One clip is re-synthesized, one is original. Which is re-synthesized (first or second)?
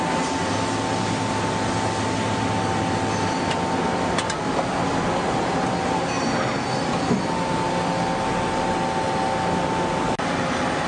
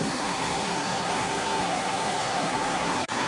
second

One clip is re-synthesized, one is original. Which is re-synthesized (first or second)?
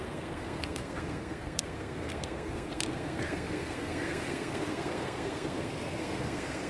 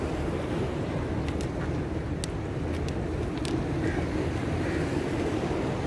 first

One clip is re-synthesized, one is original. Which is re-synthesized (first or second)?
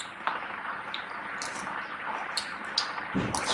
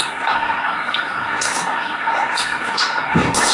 second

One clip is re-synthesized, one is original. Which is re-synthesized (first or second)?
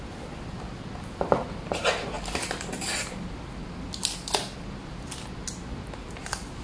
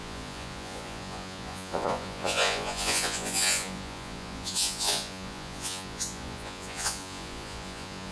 second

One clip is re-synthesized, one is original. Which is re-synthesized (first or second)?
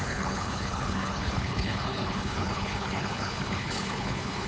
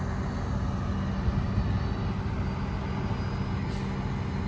first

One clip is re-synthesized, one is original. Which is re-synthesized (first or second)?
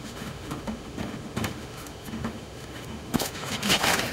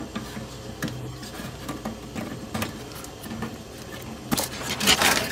first